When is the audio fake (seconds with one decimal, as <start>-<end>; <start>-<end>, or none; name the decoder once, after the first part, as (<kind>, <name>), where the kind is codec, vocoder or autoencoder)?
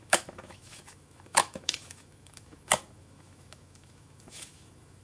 0.0-5.0 (autoencoder, DAC-VAE)